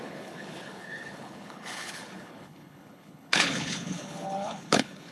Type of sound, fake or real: fake